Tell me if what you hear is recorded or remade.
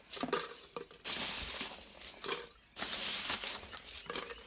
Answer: recorded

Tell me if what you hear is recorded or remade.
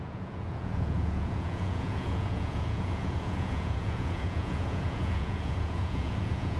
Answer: remade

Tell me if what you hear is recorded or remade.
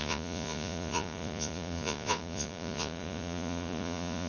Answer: remade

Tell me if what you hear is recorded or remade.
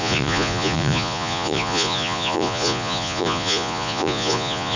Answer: remade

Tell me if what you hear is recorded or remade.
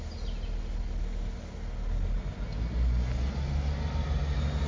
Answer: recorded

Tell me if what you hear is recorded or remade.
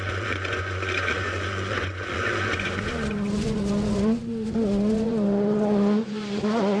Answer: remade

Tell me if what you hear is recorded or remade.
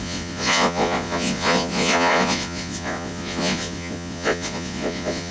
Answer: remade